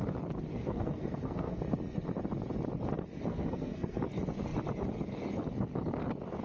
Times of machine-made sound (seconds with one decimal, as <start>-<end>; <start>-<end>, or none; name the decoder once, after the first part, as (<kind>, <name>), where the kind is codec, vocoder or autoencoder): 0.6-1.6 (codec, SNAC); 3.3-4.0